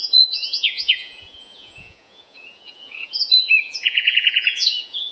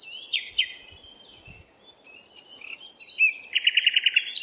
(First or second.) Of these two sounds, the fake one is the first